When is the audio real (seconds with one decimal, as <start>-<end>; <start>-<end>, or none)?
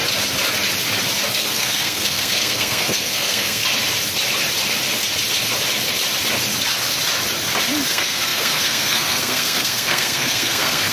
0.0-1.3; 3.6-7.9